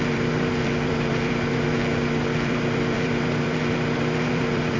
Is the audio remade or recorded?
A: remade